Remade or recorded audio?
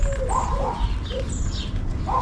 recorded